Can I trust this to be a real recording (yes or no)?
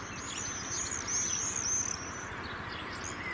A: yes